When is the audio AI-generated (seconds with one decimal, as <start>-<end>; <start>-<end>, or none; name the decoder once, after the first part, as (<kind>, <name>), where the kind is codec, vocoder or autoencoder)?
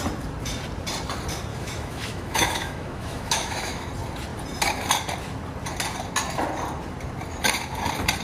1.5-3.9 (autoencoder, DAC-VAE)